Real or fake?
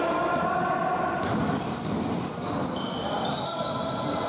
real